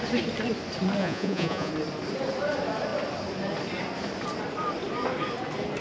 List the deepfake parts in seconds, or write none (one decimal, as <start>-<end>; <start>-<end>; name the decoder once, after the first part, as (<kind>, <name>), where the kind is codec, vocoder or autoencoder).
1.0-1.7 (vocoder, Vocos)